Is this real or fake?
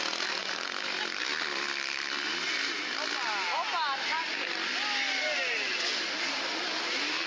real